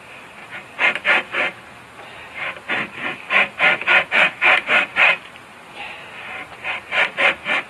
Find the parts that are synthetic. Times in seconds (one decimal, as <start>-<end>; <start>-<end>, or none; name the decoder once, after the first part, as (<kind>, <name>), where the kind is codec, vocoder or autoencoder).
0.0-0.4 (vocoder, BigVGAN v2); 1.6-7.7